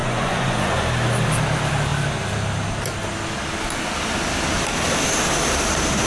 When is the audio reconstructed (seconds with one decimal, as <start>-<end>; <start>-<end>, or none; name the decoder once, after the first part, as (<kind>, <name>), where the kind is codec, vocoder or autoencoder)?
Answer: 0.0-0.8 (vocoder, Vocos)